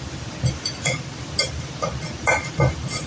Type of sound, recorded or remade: remade